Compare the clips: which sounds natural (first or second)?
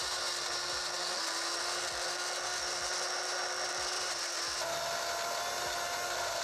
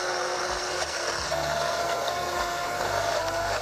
first